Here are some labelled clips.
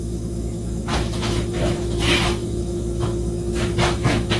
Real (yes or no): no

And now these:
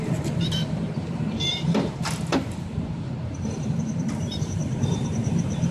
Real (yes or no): no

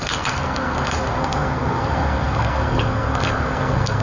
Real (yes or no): no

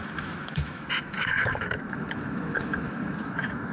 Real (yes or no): no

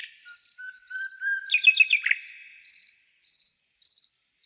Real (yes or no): yes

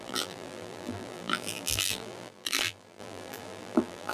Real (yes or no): no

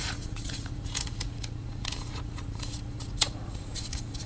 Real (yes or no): no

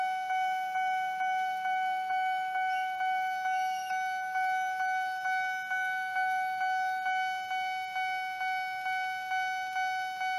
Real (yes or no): yes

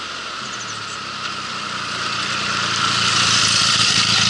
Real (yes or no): no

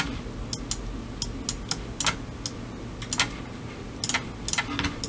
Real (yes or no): yes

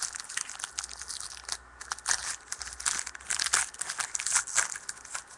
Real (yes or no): yes